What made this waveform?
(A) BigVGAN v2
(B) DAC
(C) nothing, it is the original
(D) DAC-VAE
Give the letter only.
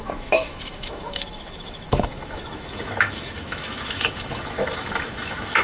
D